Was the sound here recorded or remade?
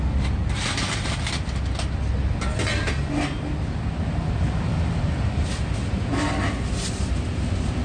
recorded